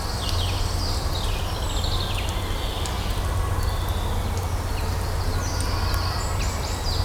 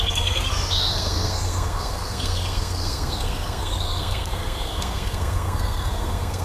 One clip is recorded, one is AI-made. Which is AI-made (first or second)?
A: second